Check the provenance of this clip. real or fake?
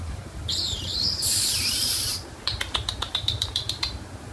fake